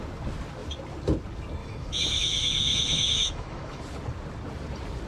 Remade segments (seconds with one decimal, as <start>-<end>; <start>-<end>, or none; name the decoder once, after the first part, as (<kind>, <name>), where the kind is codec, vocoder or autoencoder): 1.6-3.8 (autoencoder, DAC-VAE)